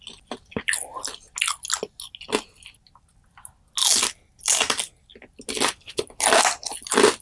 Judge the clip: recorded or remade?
recorded